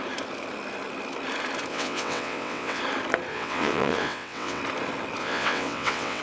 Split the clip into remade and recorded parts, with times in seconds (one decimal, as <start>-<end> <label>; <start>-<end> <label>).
0.0-1.7 recorded; 1.7-2.8 remade; 2.8-3.3 recorded; 3.3-4.6 remade; 4.6-5.2 recorded; 5.2-6.2 remade